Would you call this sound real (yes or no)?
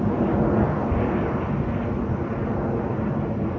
yes